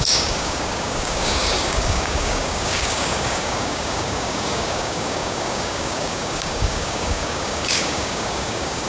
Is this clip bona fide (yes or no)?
no